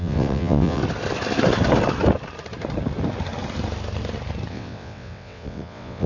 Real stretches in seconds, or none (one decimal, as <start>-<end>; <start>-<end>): 0.8-4.5